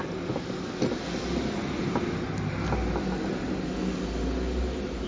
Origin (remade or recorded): recorded